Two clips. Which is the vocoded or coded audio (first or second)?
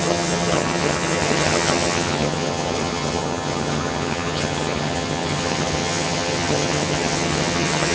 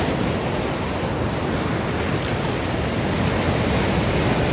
first